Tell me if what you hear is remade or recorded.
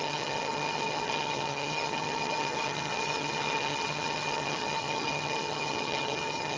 remade